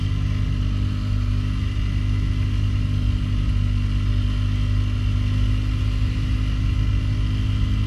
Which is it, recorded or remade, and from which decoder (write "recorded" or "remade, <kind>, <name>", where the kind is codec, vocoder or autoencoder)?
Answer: recorded